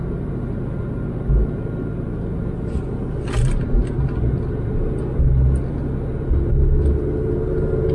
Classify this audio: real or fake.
real